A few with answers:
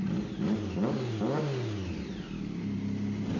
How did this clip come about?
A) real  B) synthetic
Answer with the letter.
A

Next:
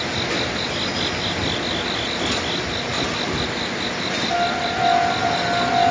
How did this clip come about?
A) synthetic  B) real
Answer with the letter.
B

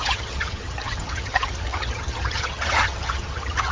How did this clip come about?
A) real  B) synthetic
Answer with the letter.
B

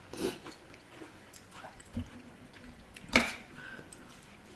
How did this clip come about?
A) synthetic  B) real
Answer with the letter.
A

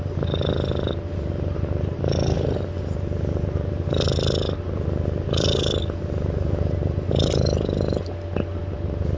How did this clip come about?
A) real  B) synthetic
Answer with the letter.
A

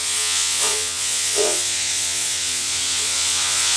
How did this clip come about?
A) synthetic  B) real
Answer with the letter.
A